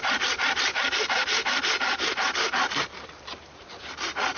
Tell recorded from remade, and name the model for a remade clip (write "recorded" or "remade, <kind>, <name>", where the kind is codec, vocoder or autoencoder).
recorded